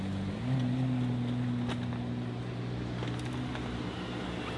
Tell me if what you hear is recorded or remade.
recorded